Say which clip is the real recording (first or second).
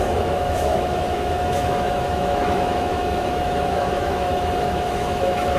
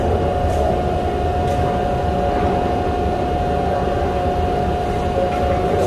second